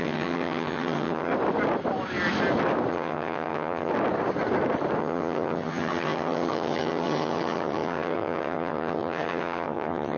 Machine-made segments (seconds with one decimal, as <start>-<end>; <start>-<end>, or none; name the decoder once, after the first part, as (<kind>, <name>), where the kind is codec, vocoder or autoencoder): 0.0-1.3 (vocoder, HiFi-GAN); 2.9-3.9; 5.0-10.2